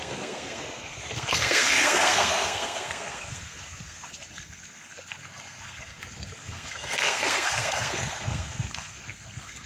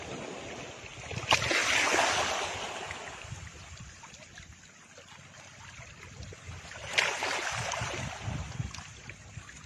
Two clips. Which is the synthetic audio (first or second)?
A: first